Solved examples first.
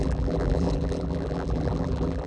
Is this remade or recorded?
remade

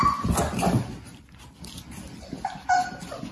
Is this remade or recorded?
recorded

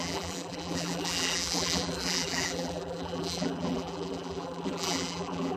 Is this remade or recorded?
remade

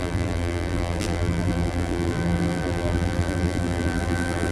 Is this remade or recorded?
remade